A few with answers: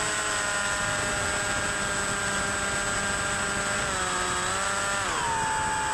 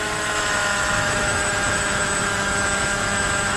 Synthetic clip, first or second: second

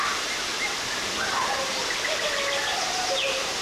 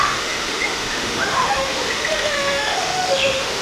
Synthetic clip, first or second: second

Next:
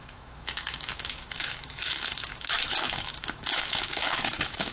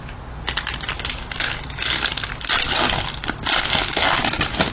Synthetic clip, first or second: first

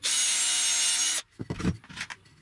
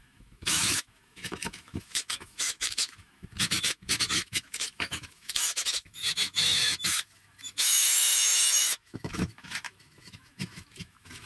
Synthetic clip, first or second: second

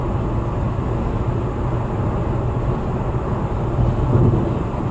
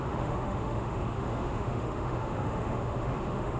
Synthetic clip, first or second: second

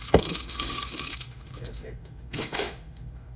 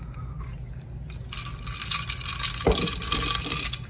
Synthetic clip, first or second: first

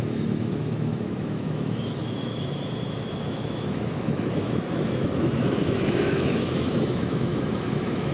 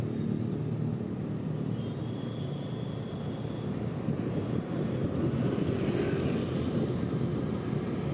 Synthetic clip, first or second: first